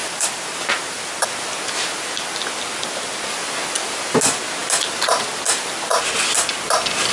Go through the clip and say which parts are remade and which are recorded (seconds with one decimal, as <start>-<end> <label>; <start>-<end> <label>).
0.0-1.1 remade; 1.1-7.1 recorded